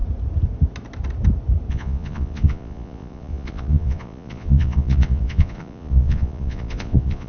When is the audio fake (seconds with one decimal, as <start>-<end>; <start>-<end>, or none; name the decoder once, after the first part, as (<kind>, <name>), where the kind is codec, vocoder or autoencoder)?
1.7-7.3 (vocoder, Vocos)